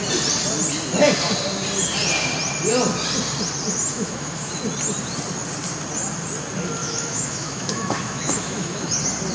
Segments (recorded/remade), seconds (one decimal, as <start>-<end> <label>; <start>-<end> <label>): 0.0-3.9 recorded; 3.9-4.5 remade; 4.5-6.8 recorded; 6.8-8.9 remade; 8.9-9.3 recorded